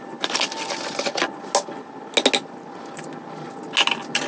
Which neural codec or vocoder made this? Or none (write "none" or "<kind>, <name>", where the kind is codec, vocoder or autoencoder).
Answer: none